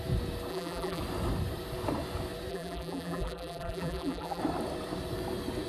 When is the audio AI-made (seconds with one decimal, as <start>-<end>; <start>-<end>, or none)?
0.5-1.0; 2.5-4.4